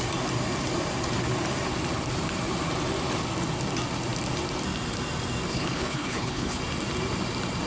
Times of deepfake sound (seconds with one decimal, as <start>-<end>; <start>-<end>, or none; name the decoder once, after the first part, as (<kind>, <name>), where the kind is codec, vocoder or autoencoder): 5.5-6.6 (codec, HILCodec)